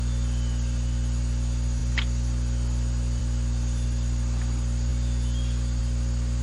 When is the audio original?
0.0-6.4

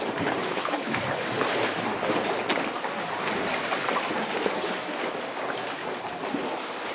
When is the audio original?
1.9-6.0

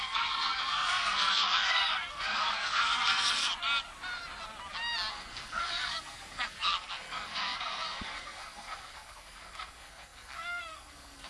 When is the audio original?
3.4-5.1

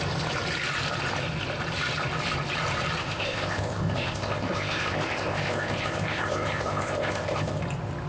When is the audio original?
0.0-3.0; 7.6-8.1

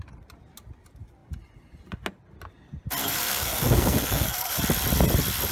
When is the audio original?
0.0-3.0; 4.6-5.5

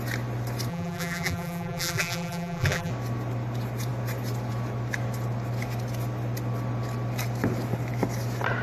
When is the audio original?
0.0-0.7; 2.9-8.6